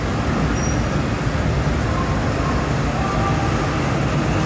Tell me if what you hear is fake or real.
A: real